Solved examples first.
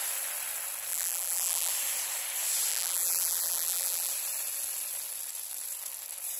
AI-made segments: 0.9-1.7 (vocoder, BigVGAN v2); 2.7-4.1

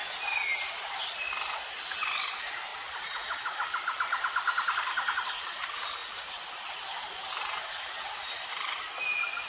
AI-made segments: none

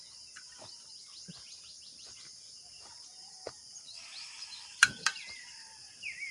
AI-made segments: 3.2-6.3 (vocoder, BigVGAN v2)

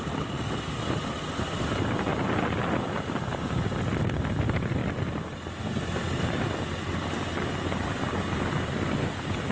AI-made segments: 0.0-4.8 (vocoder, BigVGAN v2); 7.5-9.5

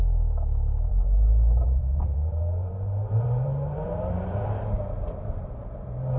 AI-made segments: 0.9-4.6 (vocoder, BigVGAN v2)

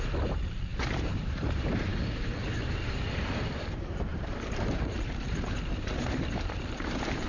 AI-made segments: 0.0-7.3 (vocoder, BigVGAN v2)

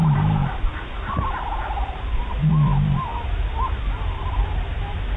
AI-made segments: none

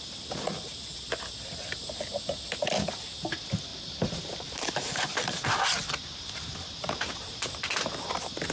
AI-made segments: 3.7-7.2 (vocoder, BigVGAN v2)